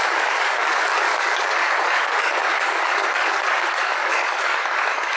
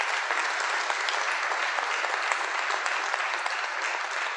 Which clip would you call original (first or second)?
second